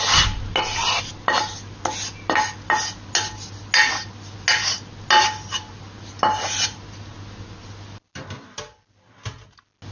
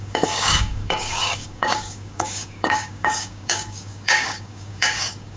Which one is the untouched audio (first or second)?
first